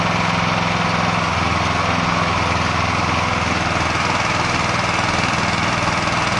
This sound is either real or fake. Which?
real